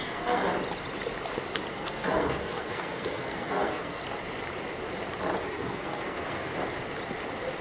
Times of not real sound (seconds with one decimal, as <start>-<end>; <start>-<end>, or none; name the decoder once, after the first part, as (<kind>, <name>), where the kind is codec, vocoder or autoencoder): 0.0-0.4 (codec, SNAC); 1.7-4.0; 5.4-6.5